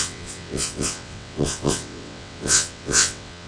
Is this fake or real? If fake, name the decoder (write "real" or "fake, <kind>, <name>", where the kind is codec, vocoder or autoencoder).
fake, vocoder, WaveNeXt